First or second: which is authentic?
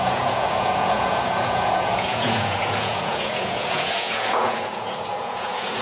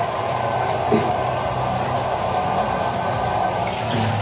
second